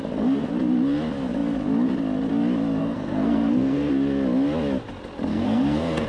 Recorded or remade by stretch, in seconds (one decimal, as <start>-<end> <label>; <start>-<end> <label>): 0.0-2.8 recorded; 2.8-3.9 remade; 3.9-5.3 recorded; 5.3-6.1 remade